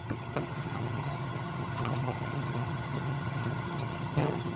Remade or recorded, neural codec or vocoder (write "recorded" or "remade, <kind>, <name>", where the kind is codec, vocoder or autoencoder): remade, vocoder, HiFi-GAN